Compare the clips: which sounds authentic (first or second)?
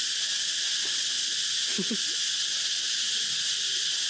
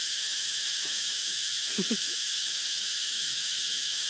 first